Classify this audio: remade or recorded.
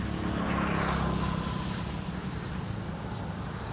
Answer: recorded